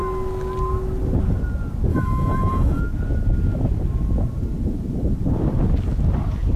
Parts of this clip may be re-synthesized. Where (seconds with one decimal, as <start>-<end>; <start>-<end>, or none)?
1.9-2.8